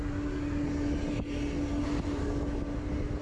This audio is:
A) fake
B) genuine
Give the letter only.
B